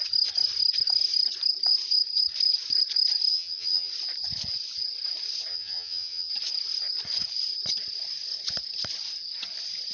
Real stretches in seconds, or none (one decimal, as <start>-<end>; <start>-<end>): 0.0-3.3; 3.9-5.5; 6.3-9.9